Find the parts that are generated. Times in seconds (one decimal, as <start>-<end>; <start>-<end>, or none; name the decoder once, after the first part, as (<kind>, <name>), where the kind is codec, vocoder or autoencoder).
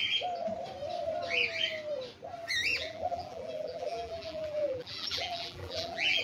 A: 2.7-6.2 (vocoder, BigVGAN v2)